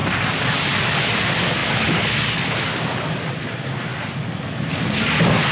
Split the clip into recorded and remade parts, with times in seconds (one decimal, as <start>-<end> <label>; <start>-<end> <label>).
0.0-5.5 recorded